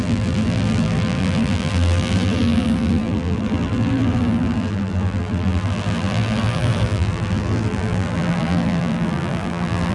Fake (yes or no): yes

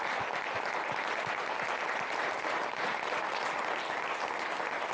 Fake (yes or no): no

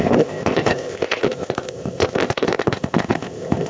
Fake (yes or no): yes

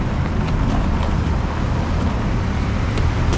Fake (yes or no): no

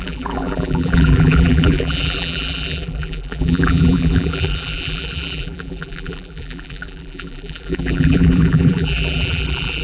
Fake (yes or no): yes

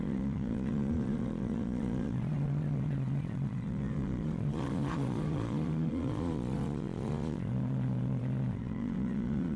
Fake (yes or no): yes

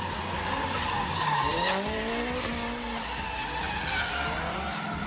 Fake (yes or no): no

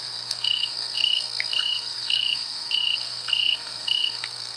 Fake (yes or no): yes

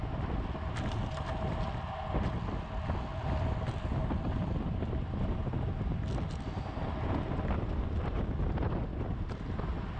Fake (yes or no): no